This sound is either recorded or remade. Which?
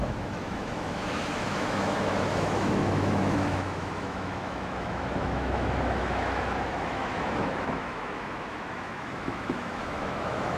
remade